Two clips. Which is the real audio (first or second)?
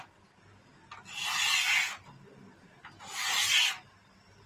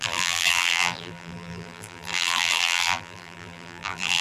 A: first